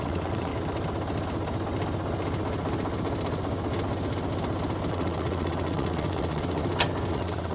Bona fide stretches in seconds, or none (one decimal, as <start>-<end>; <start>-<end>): 0.5-4.9; 6.6-7.1